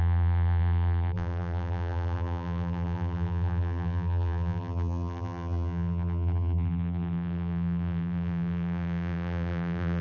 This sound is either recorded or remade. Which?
remade